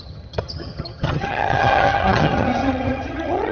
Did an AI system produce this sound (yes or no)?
yes